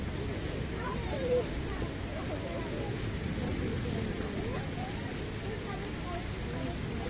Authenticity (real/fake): real